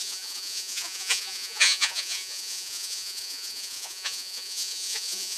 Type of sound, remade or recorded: remade